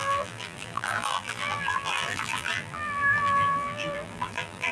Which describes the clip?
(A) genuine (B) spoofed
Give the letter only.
B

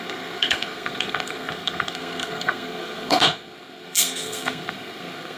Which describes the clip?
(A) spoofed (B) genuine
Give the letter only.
A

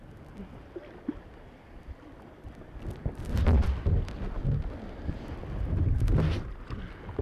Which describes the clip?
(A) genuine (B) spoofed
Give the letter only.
A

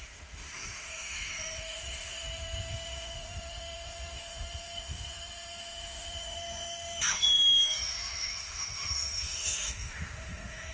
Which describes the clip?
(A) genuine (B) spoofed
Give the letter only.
B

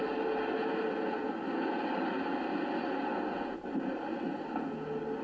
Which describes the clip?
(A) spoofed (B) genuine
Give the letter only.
B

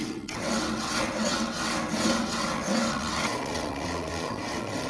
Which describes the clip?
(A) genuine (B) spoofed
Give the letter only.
B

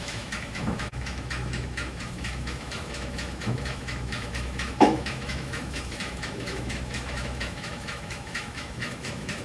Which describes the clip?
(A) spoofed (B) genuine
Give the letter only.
A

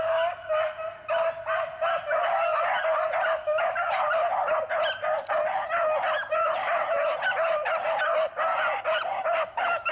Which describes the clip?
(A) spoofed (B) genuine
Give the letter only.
B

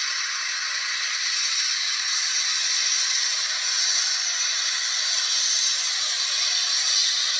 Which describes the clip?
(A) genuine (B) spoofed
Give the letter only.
A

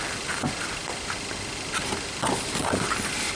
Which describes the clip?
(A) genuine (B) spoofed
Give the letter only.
A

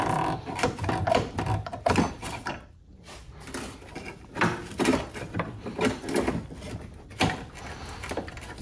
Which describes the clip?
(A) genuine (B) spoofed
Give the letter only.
B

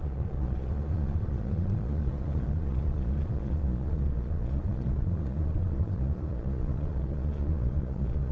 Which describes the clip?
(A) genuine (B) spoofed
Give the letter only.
B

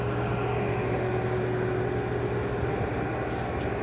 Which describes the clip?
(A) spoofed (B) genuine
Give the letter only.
B